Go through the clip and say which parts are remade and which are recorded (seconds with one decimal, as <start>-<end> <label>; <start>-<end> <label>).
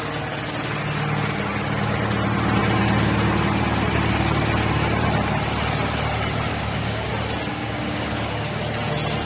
0.0-6.5 recorded; 6.5-7.1 remade; 7.1-7.5 recorded; 7.5-8.6 remade; 8.6-9.3 recorded